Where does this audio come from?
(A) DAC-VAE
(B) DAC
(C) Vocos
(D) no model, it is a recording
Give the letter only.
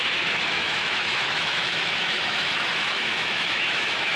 A